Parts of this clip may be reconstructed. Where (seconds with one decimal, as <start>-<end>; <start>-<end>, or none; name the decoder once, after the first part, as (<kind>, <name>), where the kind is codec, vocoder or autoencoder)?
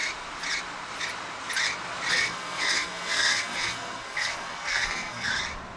2.1-5.3 (codec, SNAC)